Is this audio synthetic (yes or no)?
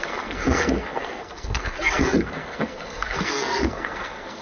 yes